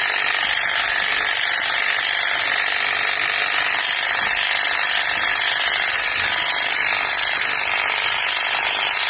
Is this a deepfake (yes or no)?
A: no